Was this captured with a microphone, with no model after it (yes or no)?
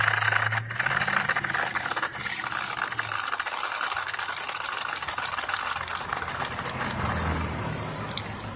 yes